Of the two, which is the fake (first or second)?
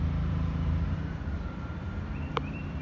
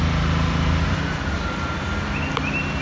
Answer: first